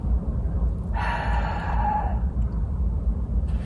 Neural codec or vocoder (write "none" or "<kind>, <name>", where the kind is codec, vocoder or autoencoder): vocoder, BigVGAN v2